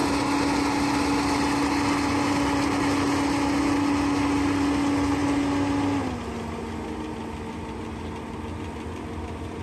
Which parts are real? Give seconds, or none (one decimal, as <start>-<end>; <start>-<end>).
0.0-9.6